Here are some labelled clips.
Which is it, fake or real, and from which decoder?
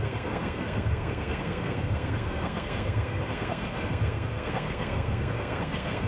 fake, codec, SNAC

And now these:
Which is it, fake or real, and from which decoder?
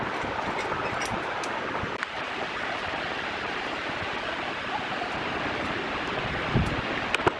real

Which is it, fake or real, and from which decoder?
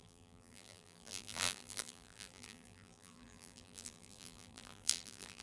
fake, vocoder, BigVGAN v2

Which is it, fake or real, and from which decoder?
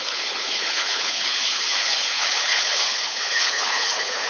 fake, codec, HILCodec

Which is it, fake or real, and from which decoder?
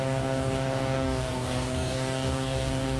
fake, codec, DAC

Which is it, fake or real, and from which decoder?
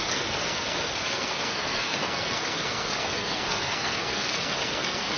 fake, codec, SNAC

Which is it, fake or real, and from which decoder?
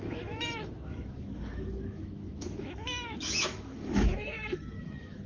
fake, autoencoder, DAC-VAE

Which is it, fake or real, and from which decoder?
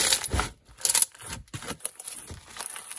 real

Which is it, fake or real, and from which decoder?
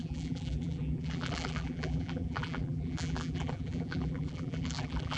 fake, vocoder, BigVGAN v2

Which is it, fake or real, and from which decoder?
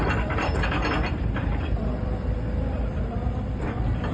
fake, vocoder, BigVGAN v2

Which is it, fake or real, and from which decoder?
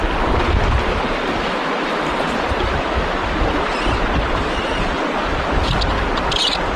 real